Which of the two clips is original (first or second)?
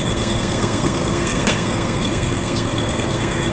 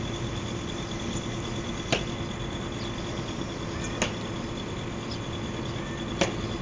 second